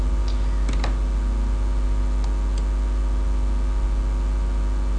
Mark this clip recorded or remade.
recorded